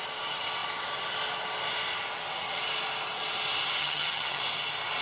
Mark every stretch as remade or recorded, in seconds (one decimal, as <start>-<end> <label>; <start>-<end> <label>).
0.0-3.8 recorded; 3.8-4.4 remade; 4.4-5.0 recorded

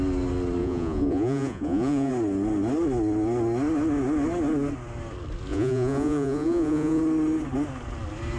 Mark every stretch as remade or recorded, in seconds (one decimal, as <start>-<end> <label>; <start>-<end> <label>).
0.0-0.6 recorded; 0.6-2.1 remade; 2.1-5.5 recorded; 5.5-7.0 remade; 7.0-8.4 recorded